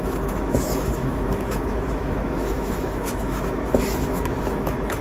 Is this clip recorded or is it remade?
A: remade